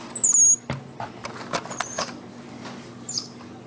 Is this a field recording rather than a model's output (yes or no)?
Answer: yes